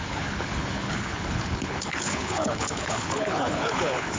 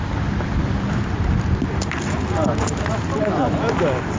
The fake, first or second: first